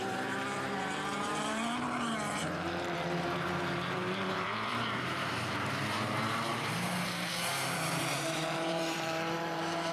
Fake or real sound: fake